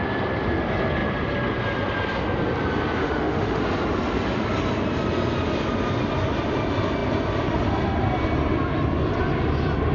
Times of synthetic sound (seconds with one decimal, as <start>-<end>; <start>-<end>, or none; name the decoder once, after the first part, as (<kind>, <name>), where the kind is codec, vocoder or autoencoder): 3.0-3.6 (autoencoder, DAC-VAE)